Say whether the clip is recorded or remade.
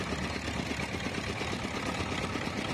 recorded